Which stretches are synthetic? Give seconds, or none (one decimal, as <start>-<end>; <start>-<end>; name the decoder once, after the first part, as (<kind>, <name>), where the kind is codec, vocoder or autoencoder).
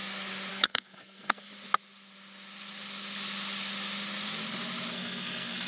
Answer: 0.5-1.5 (codec, SNAC); 4.9-5.7